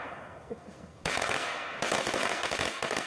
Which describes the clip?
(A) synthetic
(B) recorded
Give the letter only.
A